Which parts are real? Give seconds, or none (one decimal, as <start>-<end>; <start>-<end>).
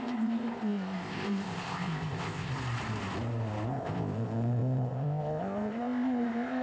2.5-3.7